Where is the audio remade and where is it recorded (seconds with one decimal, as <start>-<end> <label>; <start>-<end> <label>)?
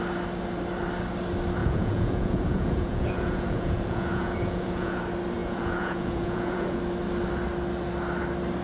0.0-1.6 recorded; 1.6-5.0 remade; 5.0-5.4 recorded; 5.4-6.8 remade; 6.8-8.6 recorded